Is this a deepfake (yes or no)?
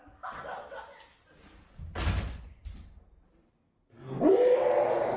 no